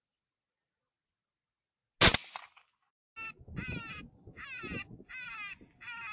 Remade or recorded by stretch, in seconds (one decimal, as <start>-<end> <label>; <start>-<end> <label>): 0.0-6.1 recorded